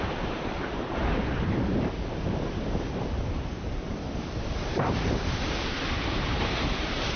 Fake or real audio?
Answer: fake